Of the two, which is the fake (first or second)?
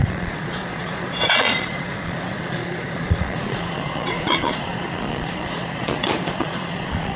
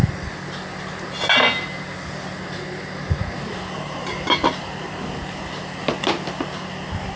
first